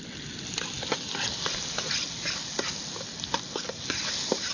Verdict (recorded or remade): recorded